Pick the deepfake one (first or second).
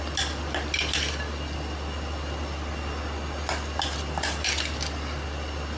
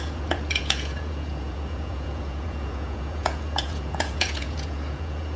second